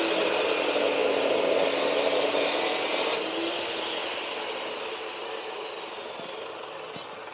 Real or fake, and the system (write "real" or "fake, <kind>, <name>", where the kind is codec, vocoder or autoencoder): real